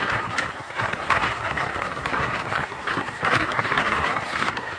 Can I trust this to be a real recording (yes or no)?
no